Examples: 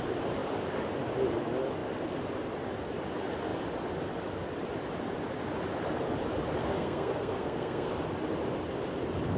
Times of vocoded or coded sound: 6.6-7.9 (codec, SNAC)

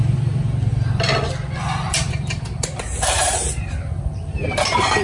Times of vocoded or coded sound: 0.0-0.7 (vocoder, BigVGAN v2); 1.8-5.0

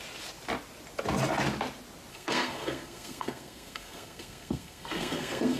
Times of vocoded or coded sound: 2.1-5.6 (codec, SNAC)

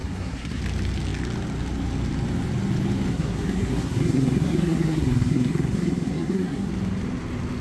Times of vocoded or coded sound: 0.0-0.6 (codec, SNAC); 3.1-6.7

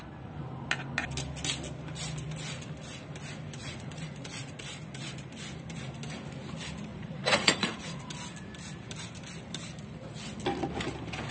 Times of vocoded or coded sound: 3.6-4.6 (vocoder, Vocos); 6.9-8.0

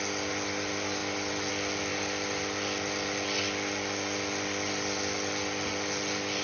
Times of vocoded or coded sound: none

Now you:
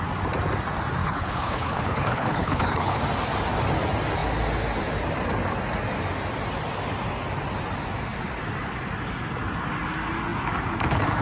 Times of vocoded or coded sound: 1.0-3.0 (codec, HILCodec)

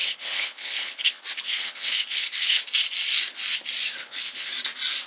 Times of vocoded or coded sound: 0.0-2.6 (codec, HILCodec); 4.0-4.5